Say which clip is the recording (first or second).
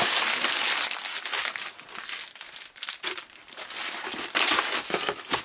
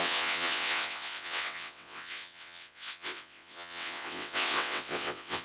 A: first